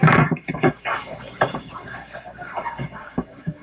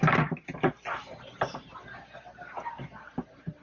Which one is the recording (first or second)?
second